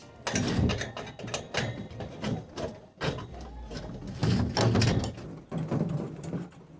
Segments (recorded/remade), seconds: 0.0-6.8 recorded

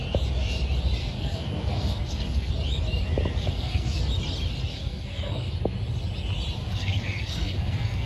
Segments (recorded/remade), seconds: 0.0-1.0 recorded; 1.0-2.5 remade; 2.5-3.4 recorded; 3.4-4.0 remade; 4.0-4.7 recorded; 4.7-5.5 remade; 5.5-6.6 recorded; 6.6-8.1 remade

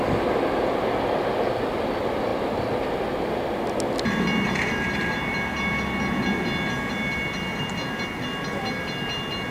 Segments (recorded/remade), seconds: 0.0-9.5 recorded

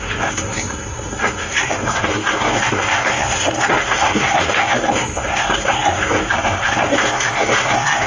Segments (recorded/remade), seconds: 0.0-8.1 remade

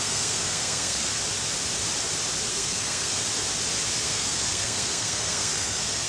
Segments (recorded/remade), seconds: 0.0-1.1 remade; 1.1-2.5 recorded; 2.5-3.2 remade; 3.2-4.0 recorded; 4.0-6.1 remade